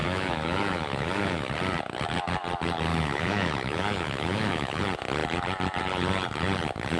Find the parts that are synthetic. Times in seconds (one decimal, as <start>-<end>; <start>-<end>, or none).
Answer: 0.0-1.5; 2.9-4.8